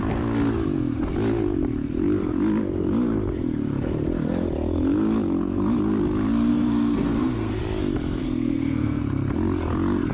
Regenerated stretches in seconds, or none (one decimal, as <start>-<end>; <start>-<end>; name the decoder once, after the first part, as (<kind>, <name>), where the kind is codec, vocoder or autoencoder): 6.5-7.6 (codec, SNAC); 8.2-9.0